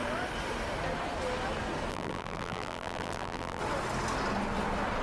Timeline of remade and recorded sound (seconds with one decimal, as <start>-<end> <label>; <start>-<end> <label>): 0.0-1.9 recorded; 1.9-3.6 remade; 3.6-5.0 recorded

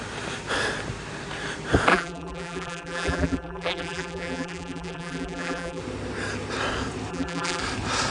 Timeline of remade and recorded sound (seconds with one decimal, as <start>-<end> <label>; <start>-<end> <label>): 0.0-1.9 recorded; 1.9-5.8 remade; 5.8-7.1 recorded; 7.1-7.6 remade; 7.6-8.1 recorded

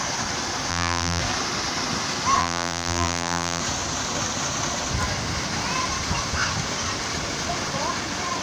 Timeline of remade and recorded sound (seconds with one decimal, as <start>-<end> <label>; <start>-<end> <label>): 0.0-0.7 recorded; 0.7-1.2 remade; 1.2-2.4 recorded; 2.4-3.6 remade; 3.6-8.4 recorded

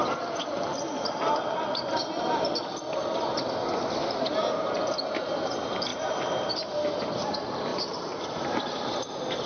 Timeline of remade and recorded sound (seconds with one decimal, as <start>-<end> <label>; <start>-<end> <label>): 0.0-5.9 recorded; 5.9-6.5 remade; 6.5-7.7 recorded; 7.7-8.3 remade; 8.3-9.5 recorded

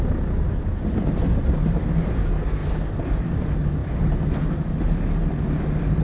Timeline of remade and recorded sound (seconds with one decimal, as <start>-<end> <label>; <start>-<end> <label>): 0.0-2.6 recorded; 2.6-3.3 remade; 3.3-3.8 recorded; 3.8-4.4 remade; 4.4-6.0 recorded

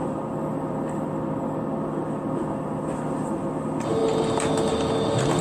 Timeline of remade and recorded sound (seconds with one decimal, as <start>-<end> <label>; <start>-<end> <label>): 0.0-4.0 recorded; 4.0-4.7 remade; 4.7-5.4 recorded

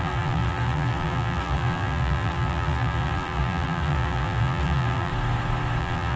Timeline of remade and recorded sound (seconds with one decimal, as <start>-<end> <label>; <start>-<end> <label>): 0.0-5.1 remade; 5.1-5.8 recorded; 5.8-6.2 remade